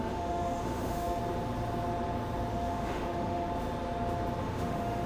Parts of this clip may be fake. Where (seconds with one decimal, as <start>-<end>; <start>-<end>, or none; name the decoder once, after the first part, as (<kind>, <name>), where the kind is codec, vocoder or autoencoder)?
0.0-1.2 (autoencoder, DAC-VAE); 2.5-3.5; 4.4-5.1